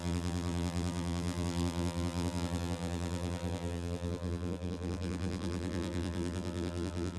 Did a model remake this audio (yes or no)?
yes